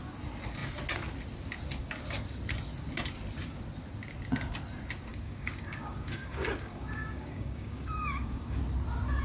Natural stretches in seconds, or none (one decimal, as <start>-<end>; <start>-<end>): 0.0-5.1; 8.6-9.2